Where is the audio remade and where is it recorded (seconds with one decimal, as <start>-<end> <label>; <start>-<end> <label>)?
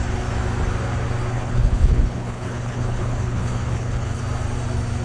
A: 0.0-1.3 recorded; 1.3-4.2 remade; 4.2-5.0 recorded